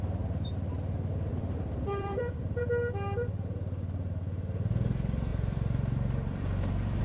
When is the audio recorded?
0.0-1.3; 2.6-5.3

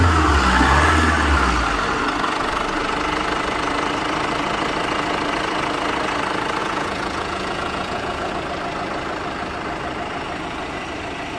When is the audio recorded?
0.0-6.6; 8.3-11.4

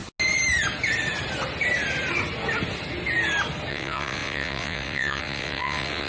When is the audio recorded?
0.0-3.7